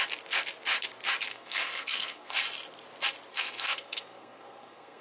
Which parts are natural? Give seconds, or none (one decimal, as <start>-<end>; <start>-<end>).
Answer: 0.0-1.3; 2.4-3.3